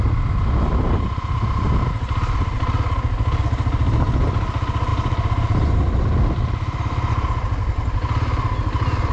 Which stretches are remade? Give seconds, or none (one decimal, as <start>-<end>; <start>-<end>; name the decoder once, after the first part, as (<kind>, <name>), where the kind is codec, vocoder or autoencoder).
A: 4.9-7.1 (vocoder, BigVGAN v2)